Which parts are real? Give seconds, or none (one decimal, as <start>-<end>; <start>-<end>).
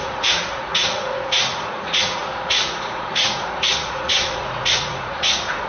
none